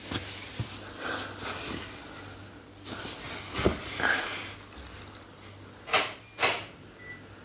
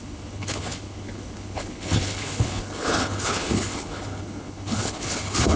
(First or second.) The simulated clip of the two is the second